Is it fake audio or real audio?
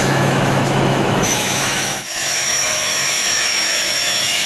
fake